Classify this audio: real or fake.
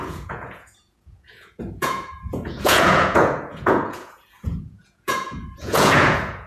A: fake